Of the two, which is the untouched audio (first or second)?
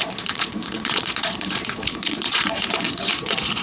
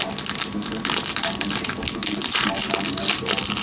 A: second